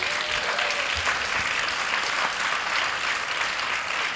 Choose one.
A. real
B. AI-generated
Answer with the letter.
A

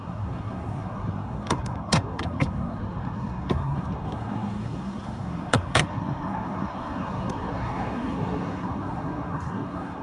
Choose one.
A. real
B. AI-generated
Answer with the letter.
B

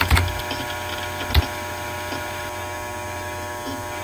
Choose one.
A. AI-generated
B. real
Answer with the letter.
B